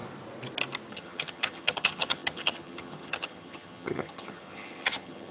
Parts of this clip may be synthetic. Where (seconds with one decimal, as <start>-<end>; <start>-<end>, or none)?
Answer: 0.9-5.3